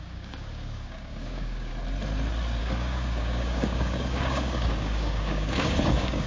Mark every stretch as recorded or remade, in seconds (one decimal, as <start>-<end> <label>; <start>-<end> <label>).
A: 0.0-1.7 remade; 1.7-2.6 recorded; 2.6-6.3 remade